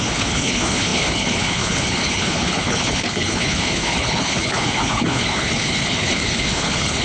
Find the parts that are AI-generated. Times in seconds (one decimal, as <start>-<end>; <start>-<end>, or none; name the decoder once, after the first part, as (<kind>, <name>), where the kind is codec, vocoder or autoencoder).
0.0-7.0 (codec, HILCodec)